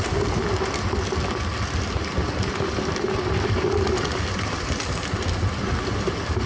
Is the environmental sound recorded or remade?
recorded